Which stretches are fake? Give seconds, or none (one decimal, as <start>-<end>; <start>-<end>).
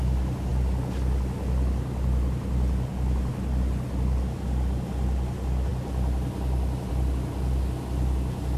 none